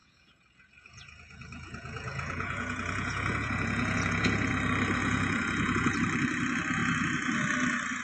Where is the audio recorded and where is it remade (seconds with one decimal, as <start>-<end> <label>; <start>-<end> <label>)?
0.0-4.5 remade; 4.5-5.0 recorded; 5.0-5.9 remade; 5.9-8.0 recorded

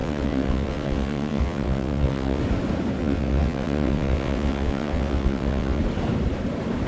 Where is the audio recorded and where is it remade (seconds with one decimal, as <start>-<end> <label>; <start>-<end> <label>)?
0.0-2.4 remade; 2.4-3.0 recorded; 3.0-5.8 remade; 5.8-6.9 recorded

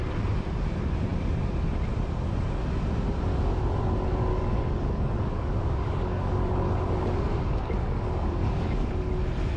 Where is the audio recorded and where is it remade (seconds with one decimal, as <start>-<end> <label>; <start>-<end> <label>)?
0.0-4.3 recorded; 4.3-8.9 remade; 8.9-9.6 recorded

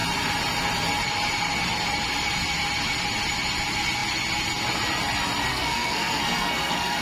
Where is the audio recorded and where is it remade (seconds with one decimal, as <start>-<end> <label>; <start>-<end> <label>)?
0.0-5.5 recorded; 5.5-7.0 remade

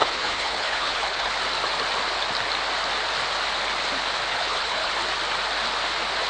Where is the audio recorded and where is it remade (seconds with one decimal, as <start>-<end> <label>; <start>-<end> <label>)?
0.0-1.3 remade; 1.3-4.3 recorded; 4.3-4.9 remade; 4.9-6.3 recorded

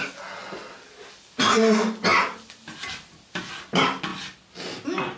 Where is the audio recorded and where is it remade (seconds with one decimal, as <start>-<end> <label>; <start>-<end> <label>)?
0.0-5.2 recorded